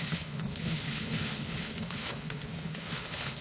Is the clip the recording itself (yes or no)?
no